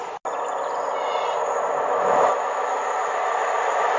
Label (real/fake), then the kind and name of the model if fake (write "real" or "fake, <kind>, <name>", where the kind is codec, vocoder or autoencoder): real